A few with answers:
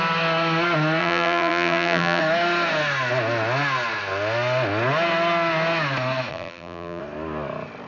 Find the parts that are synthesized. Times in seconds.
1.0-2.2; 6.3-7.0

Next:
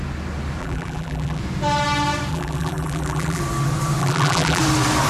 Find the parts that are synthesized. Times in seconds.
0.6-1.4; 2.3-3.4; 4.0-4.6

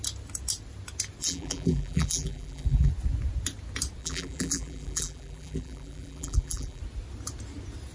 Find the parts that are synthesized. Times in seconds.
1.2-2.9; 4.0-6.8

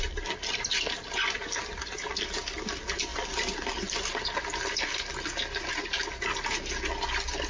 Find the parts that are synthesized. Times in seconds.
none

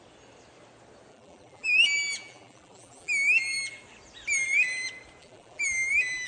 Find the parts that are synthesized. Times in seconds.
1.1-3.7; 5.2-6.3

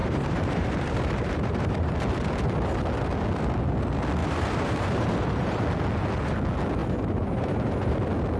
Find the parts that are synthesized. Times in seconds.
0.0-1.9; 4.2-5.6; 6.8-7.9

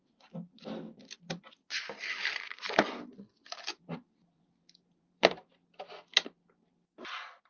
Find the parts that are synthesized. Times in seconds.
3.3-5.5